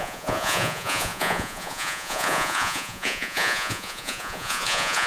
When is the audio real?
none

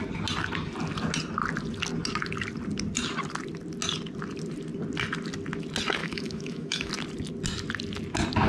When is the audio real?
0.0-6.0; 6.9-8.5